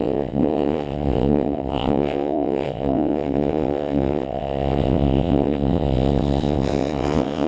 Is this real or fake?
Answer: fake